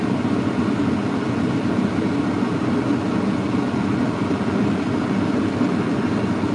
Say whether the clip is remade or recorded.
recorded